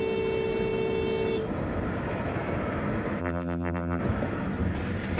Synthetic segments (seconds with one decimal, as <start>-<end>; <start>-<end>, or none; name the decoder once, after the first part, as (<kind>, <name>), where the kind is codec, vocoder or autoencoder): 3.2-4.0 (vocoder, BigVGAN v2)